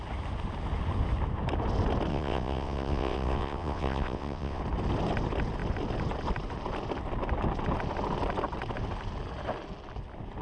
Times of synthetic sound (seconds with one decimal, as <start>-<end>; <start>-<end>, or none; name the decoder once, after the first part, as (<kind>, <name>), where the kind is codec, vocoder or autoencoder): 2.1-4.6 (vocoder, WaveNeXt)